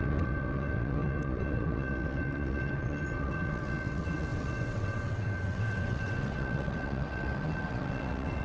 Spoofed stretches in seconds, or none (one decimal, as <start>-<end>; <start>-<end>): 0.0-8.4